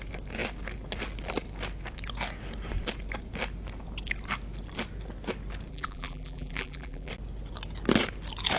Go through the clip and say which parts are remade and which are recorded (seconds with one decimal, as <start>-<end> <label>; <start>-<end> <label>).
0.0-5.7 recorded; 5.7-7.1 remade; 7.1-8.6 recorded